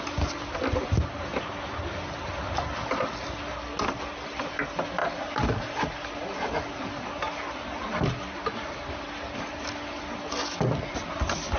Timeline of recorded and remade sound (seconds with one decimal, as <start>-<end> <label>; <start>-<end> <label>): 0.0-5.0 recorded; 5.0-5.8 remade; 5.8-11.6 recorded